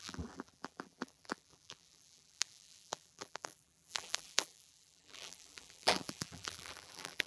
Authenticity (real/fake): fake